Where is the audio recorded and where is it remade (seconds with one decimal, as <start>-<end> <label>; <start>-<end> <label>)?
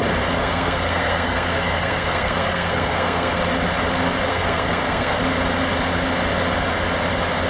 0.0-0.4 recorded; 0.4-3.4 remade; 3.4-4.3 recorded; 4.3-5.2 remade; 5.2-7.5 recorded